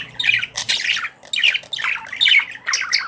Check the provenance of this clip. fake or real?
real